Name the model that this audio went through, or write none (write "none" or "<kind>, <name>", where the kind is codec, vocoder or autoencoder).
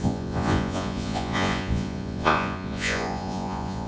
vocoder, Vocos